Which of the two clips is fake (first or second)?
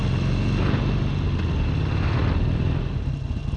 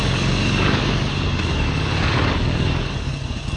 second